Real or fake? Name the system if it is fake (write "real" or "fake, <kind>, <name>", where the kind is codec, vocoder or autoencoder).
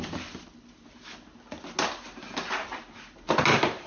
real